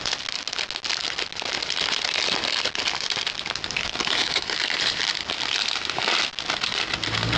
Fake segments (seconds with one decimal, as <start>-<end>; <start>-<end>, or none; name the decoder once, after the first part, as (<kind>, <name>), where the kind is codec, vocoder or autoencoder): 3.8-4.6 (autoencoder, DAC-VAE)